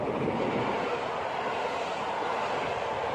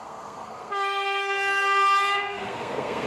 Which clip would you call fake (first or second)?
second